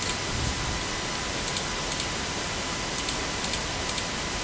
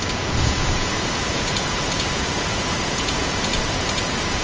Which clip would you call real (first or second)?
first